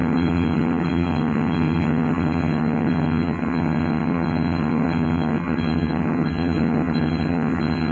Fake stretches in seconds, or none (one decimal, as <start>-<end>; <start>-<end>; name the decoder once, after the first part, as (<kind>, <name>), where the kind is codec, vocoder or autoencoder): 0.0-7.9 (vocoder, HiFi-GAN)